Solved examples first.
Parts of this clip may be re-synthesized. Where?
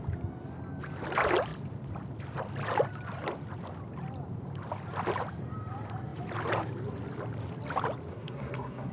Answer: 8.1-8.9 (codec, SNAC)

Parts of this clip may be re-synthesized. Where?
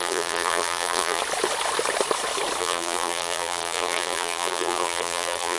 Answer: 0.0-1.2 (vocoder, BigVGAN v2); 2.6-5.6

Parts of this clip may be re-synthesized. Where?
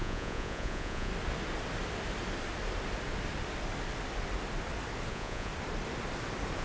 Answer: 0.0-1.1 (vocoder, Vocos); 5.1-5.5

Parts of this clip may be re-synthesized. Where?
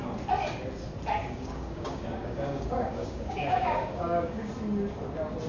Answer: 1.2-4.5 (codec, DAC)